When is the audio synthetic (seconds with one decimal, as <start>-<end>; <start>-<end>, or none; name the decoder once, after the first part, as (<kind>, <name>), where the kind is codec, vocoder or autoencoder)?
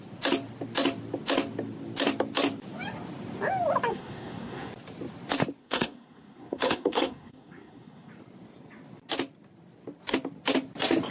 3.9-4.7 (codec, SNAC); 5.6-8.1